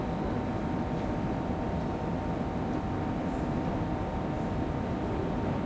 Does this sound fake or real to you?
real